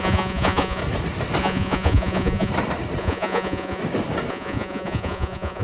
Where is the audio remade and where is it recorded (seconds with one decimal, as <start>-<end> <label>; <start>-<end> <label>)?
0.0-0.8 remade; 0.8-1.4 recorded; 1.4-2.5 remade; 2.5-3.0 recorded; 3.0-3.8 remade; 3.8-4.3 recorded; 4.3-5.6 remade